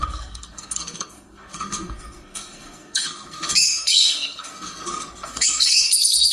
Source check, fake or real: fake